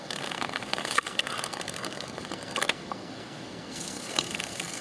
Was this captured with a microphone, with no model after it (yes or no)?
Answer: no